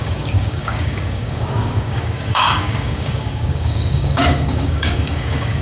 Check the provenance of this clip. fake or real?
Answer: fake